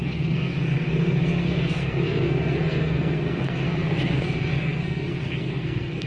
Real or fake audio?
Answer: fake